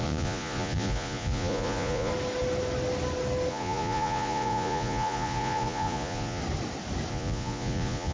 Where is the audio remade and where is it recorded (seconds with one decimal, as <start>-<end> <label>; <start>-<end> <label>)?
0.0-2.1 remade; 2.1-3.5 recorded; 3.5-6.4 remade; 6.4-7.1 recorded; 7.1-8.1 remade

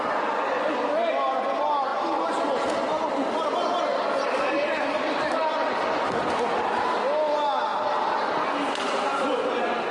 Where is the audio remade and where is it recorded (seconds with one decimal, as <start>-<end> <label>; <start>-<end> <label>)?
0.0-9.9 recorded

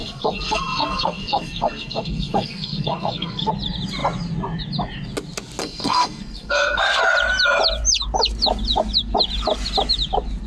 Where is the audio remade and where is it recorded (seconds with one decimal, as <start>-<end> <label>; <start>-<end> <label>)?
0.0-3.5 remade; 3.5-5.6 recorded; 5.6-6.8 remade; 6.8-10.5 recorded